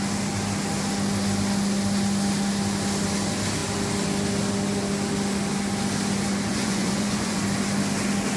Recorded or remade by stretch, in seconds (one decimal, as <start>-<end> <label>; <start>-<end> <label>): 0.0-6.5 recorded; 6.5-7.4 remade; 7.4-8.4 recorded